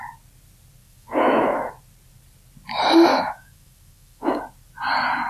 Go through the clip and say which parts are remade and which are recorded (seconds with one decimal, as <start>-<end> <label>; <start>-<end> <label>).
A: 0.0-0.8 recorded; 0.8-1.7 remade; 1.7-3.1 recorded; 3.1-4.4 remade; 4.4-5.3 recorded